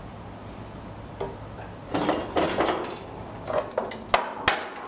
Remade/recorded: recorded